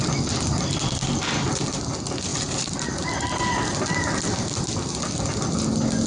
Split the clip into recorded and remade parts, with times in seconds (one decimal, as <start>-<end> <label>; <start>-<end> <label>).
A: 0.0-6.1 recorded